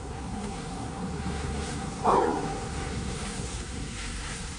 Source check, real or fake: fake